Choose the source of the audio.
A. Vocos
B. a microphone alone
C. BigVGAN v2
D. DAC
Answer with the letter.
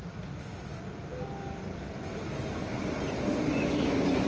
B